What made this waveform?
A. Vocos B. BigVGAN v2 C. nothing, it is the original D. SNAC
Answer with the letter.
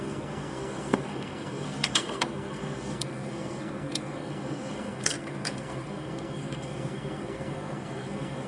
D